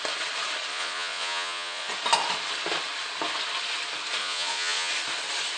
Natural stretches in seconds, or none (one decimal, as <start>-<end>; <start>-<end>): 0.0-0.7; 1.9-4.2; 4.9-5.6